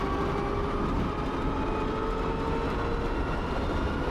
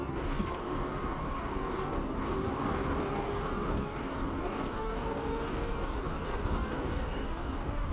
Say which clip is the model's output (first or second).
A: second